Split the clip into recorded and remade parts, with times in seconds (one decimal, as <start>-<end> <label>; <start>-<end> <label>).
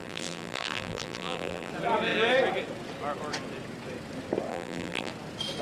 0.0-1.7 remade; 1.7-4.5 recorded; 4.5-5.1 remade; 5.1-5.6 recorded